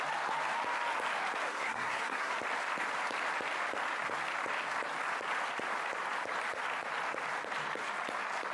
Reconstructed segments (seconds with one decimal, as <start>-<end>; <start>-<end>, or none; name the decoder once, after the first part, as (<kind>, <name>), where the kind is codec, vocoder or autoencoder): 1.5-2.3 (codec, SNAC)